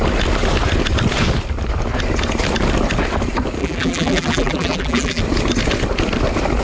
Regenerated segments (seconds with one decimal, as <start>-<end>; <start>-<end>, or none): 3.6-5.2